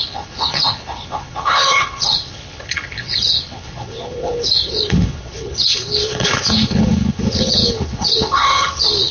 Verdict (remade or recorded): remade